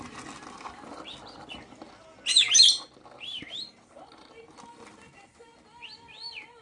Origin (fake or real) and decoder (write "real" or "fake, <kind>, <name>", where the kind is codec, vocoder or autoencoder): real